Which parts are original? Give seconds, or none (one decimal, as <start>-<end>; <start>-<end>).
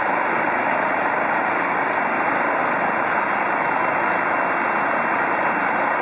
0.0-6.0